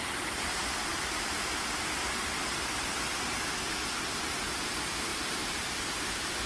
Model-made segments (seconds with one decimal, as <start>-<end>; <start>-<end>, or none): none